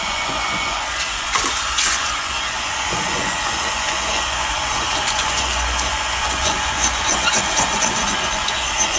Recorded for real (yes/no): no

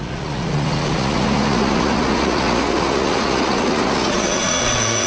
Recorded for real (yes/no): no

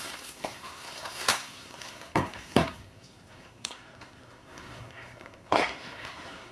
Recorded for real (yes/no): no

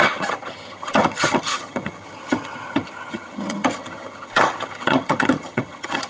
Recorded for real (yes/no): no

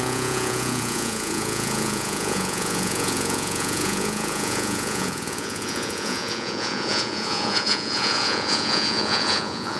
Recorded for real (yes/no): no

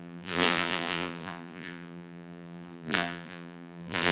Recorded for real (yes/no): no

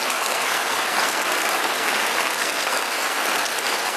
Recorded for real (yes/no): no